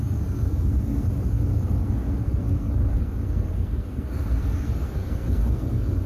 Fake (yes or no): yes